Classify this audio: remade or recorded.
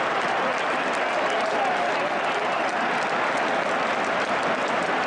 recorded